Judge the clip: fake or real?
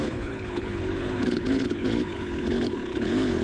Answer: fake